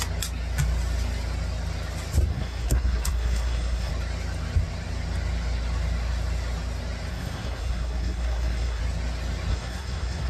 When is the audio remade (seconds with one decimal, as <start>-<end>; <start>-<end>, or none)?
2.3-3.9; 7.1-8.8; 9.5-10.3